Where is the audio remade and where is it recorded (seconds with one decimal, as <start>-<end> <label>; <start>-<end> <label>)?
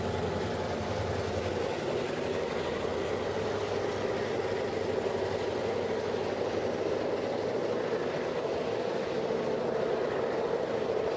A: 0.0-11.2 recorded